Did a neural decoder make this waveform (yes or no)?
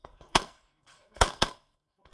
yes